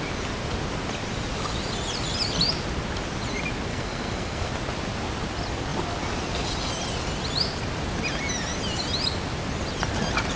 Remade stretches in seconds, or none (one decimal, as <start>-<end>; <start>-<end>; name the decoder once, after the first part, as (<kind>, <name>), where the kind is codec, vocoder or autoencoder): 3.7-4.5 (codec, SNAC)